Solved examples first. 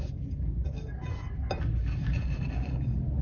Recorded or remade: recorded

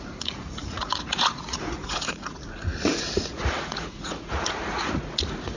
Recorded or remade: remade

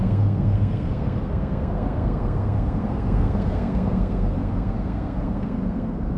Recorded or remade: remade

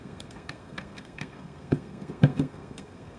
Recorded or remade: remade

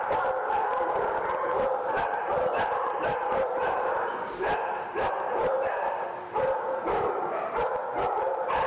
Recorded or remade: remade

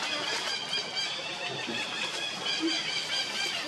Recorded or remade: recorded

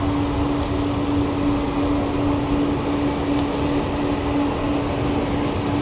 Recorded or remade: recorded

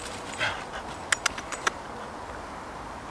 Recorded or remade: recorded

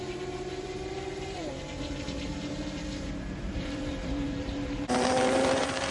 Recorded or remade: remade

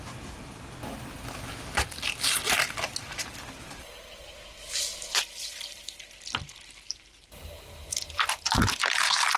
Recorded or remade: recorded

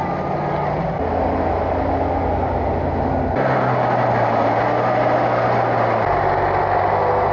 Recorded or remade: recorded